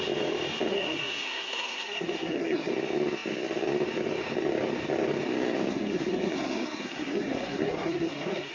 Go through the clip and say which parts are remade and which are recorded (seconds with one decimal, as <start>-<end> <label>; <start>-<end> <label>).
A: 0.0-0.7 recorded; 0.7-2.7 remade; 2.7-5.7 recorded; 5.7-8.5 remade